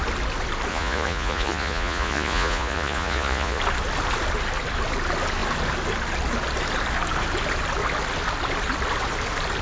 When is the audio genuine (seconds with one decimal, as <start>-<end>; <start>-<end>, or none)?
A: 0.0-0.7; 3.6-9.6